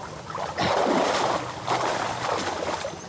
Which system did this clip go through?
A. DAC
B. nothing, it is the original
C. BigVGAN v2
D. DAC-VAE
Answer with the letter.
B